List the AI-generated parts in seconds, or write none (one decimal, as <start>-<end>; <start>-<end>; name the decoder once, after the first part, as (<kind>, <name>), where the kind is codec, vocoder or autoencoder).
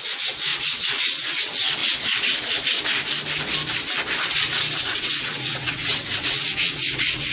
0.0-1.8 (vocoder, WaveNeXt); 4.8-7.3